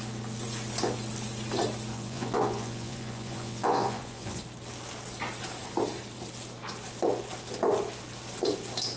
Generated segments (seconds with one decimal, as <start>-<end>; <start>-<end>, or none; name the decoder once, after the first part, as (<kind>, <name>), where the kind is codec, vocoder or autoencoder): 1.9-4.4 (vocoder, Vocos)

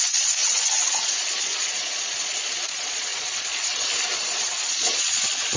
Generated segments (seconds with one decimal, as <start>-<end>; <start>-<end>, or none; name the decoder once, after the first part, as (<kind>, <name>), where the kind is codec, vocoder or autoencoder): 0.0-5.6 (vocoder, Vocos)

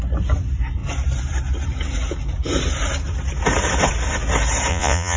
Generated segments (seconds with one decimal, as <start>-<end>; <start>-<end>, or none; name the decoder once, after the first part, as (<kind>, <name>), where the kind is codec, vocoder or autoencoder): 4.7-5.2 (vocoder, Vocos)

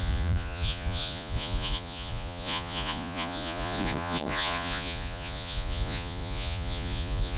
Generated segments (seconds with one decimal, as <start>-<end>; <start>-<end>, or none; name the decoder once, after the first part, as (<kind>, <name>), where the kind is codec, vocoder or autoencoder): 0.0-7.4 (vocoder, Vocos)